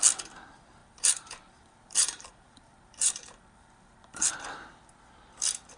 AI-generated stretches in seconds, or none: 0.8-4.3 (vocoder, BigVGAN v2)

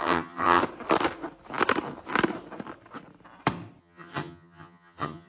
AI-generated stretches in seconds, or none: 0.0-0.6 (vocoder, HiFi-GAN); 3.8-5.3

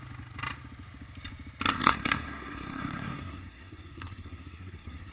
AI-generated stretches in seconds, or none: 1.7-5.1 (codec, SNAC)

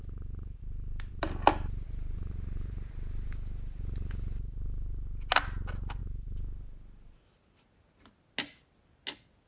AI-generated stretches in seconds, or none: none

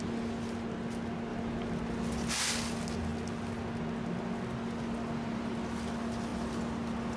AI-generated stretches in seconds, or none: none

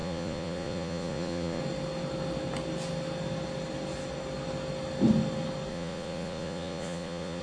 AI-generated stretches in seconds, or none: 0.0-1.6 (vocoder, Vocos); 5.7-7.4

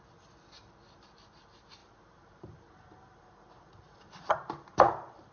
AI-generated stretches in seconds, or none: 1.8-5.3 (vocoder, BigVGAN v2)